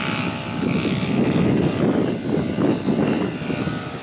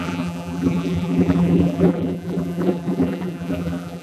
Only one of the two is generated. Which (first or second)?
second